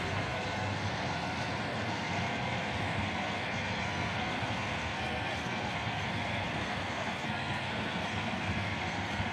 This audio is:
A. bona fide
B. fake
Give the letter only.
B